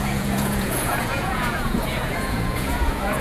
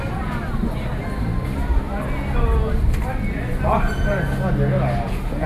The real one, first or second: second